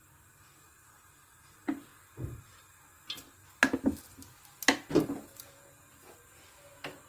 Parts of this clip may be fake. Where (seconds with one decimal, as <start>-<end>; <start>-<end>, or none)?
none